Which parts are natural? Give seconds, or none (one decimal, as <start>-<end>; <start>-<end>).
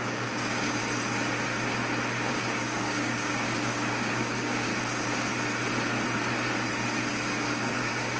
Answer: 0.8-2.3; 4.7-7.1